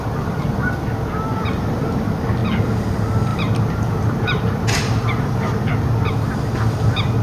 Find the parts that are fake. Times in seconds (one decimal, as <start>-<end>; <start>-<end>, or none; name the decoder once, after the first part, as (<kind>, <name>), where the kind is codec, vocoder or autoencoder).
3.3-6.1 (vocoder, BigVGAN v2)